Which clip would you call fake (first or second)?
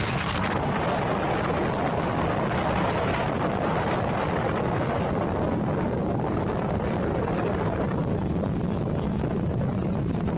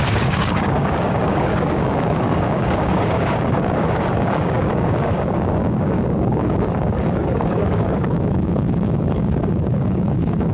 second